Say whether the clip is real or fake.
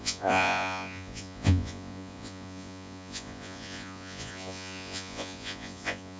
fake